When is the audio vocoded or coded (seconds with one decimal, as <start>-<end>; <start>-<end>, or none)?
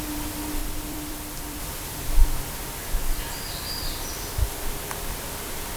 0.6-1.6